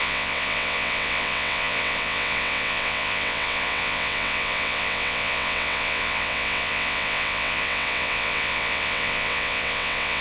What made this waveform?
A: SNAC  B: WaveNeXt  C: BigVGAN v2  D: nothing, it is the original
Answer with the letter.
B